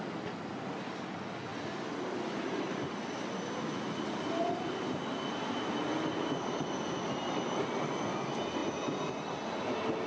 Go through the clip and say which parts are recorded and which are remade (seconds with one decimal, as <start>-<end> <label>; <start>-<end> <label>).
0.0-10.1 recorded